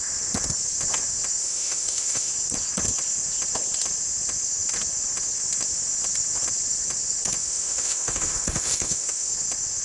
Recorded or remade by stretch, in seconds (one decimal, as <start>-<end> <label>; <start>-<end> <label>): 0.0-1.4 recorded; 1.4-2.3 remade; 2.3-7.4 recorded; 7.4-9.3 remade; 9.3-9.8 recorded